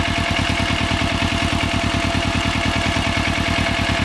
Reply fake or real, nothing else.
real